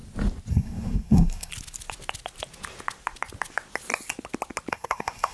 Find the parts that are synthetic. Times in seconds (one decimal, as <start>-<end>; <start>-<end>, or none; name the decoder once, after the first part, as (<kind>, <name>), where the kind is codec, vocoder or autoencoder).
0.5-1.5 (codec, SNAC); 4.7-5.3